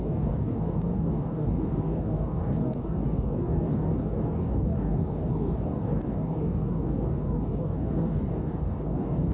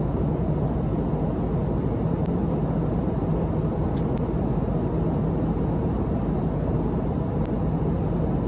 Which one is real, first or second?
second